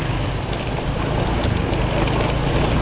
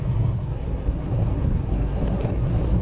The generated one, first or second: second